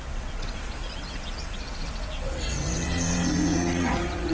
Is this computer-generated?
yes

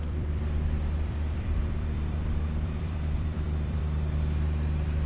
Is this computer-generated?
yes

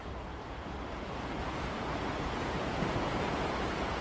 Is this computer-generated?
yes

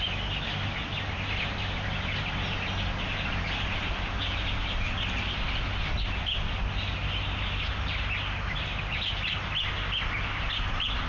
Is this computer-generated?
no